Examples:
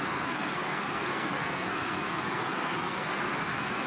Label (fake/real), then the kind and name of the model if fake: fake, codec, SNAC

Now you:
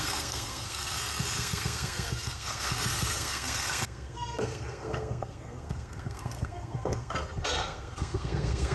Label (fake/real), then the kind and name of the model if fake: fake, codec, SNAC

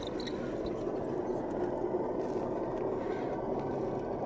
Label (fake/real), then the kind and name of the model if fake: real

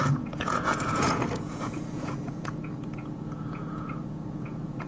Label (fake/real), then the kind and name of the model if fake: fake, vocoder, Vocos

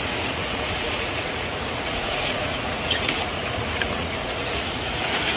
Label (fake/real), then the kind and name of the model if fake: fake, vocoder, Vocos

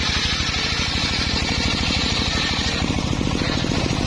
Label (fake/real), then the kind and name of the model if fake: real